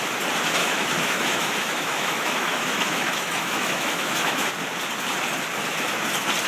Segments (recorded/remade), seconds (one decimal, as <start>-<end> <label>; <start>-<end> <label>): 0.0-0.6 recorded; 0.6-4.5 remade; 4.5-6.5 recorded